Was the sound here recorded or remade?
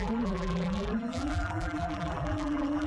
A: remade